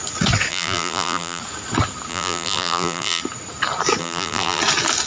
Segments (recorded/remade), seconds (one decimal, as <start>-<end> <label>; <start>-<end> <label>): 0.0-0.5 recorded; 0.5-1.4 remade; 1.4-2.1 recorded; 2.1-3.2 remade; 3.2-4.0 recorded; 4.0-4.6 remade; 4.6-5.1 recorded